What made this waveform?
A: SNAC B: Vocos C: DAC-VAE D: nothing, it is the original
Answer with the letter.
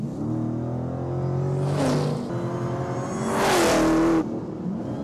D